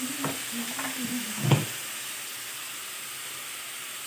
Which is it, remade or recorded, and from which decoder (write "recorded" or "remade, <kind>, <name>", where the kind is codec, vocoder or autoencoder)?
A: recorded